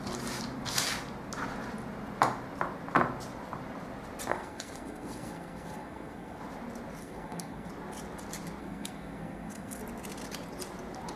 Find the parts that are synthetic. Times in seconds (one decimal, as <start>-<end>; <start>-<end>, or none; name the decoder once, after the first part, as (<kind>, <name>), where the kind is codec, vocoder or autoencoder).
4.3-6.4 (codec, SNAC); 7.0-7.7; 8.6-9.8